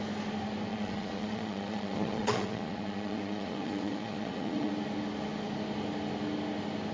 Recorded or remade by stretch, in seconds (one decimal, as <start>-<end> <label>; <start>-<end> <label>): 0.0-0.7 recorded; 0.7-4.7 remade; 4.7-6.9 recorded